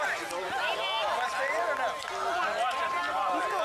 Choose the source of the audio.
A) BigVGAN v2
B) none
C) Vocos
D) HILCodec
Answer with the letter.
B